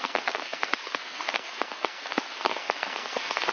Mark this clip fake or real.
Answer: fake